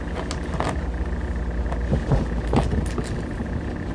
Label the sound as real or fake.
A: real